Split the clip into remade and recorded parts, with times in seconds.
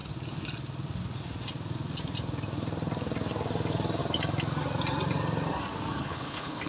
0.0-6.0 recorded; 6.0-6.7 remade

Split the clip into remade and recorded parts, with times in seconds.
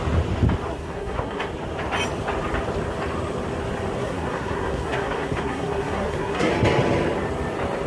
0.0-0.7 recorded; 0.7-1.5 remade; 1.5-4.0 recorded; 4.0-6.5 remade; 6.5-7.9 recorded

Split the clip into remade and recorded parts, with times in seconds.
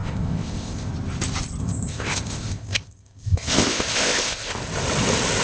0.0-0.9 remade; 0.9-1.6 recorded; 1.6-4.6 remade; 4.6-5.4 recorded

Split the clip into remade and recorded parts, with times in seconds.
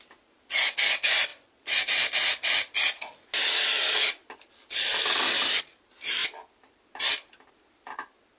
0.0-8.4 recorded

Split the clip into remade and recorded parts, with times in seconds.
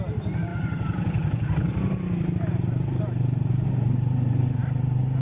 0.0-5.2 recorded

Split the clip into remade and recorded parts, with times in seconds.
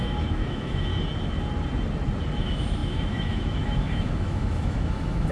0.0-0.9 remade; 0.9-2.4 recorded; 2.4-5.3 remade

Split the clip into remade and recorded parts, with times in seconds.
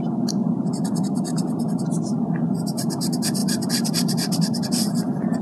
0.0-0.4 recorded; 0.4-1.7 remade; 1.7-3.4 recorded; 3.4-5.4 remade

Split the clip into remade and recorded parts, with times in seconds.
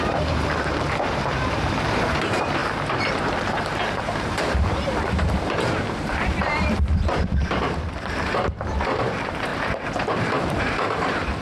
0.0-11.4 remade